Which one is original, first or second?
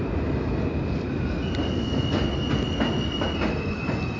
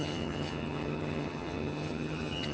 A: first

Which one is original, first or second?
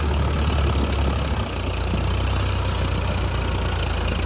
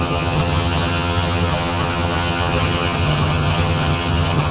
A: first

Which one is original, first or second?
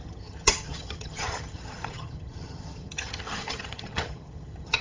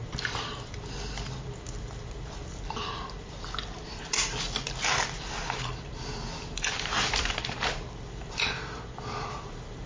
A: second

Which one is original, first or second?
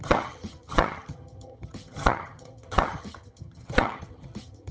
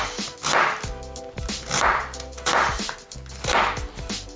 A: second